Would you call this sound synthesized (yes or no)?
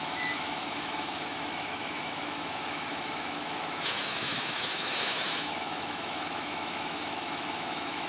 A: yes